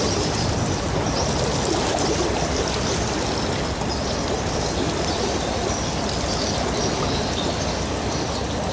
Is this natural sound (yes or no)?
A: yes